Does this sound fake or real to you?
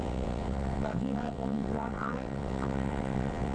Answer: fake